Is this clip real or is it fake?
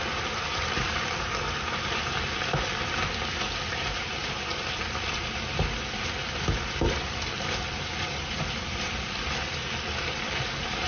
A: fake